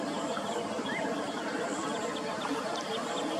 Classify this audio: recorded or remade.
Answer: recorded